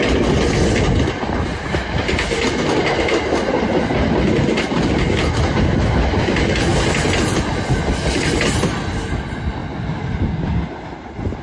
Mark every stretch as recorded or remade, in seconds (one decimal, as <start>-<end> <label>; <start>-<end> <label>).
0.0-11.4 recorded